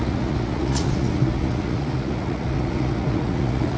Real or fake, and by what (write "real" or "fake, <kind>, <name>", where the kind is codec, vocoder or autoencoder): fake, vocoder, Vocos